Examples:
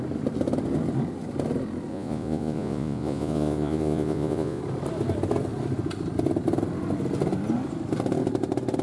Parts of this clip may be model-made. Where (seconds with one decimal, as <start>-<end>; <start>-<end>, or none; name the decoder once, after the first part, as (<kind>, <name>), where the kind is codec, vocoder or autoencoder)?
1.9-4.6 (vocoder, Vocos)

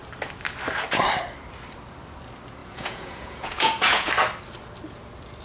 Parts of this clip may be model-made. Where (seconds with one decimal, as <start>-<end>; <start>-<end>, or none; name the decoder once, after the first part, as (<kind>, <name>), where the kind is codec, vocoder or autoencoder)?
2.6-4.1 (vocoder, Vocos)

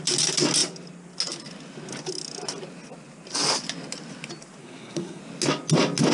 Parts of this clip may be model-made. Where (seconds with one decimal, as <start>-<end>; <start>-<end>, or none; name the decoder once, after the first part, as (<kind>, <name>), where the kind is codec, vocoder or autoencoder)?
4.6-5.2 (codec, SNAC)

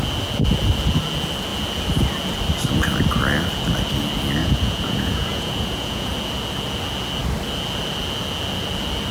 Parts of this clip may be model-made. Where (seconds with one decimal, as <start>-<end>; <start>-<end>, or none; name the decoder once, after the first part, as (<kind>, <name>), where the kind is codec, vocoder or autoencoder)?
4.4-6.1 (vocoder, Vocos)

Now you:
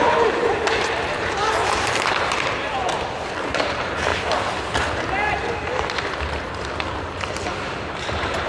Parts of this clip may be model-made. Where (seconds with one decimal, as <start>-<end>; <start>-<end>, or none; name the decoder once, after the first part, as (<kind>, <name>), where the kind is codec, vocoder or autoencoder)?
0.0-2.8 (vocoder, BigVGAN v2); 3.4-4.1; 7.3-8.5